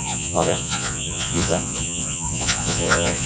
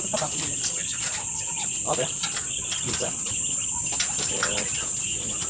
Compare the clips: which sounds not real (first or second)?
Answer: first